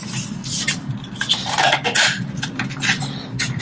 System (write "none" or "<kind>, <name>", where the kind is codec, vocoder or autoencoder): vocoder, BigVGAN v2